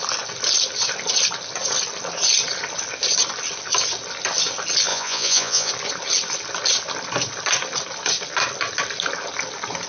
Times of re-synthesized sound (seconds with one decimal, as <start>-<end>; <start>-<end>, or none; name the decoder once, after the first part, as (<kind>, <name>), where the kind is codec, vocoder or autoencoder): 4.9-5.7 (vocoder, Vocos)